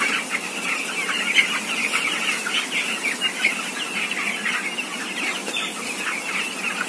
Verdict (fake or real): real